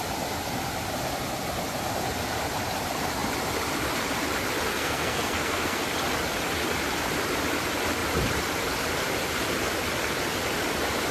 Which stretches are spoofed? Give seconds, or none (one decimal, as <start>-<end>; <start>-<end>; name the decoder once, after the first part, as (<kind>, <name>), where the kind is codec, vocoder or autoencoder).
4.7-5.8 (codec, SNAC)